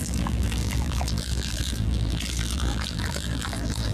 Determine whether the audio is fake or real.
fake